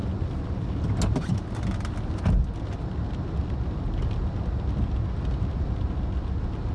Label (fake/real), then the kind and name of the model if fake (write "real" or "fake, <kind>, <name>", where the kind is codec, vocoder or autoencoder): real